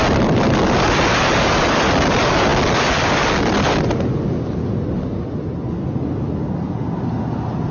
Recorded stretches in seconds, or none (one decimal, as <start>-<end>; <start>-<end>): 0.0-7.7